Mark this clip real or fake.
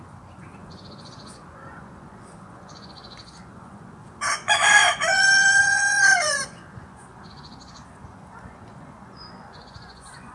fake